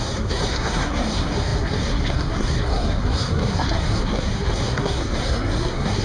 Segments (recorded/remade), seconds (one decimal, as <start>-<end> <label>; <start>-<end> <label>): 0.0-6.0 remade